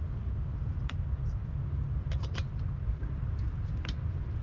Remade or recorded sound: recorded